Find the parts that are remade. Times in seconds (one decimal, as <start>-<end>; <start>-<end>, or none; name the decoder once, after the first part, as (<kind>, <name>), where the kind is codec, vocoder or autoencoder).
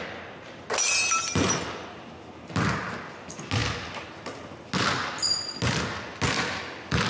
none